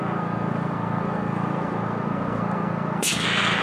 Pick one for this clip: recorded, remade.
remade